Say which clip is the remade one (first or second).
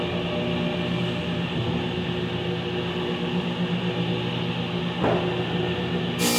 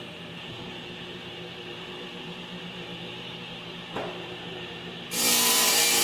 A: second